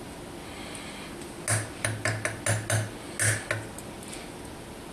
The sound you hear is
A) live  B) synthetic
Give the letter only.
A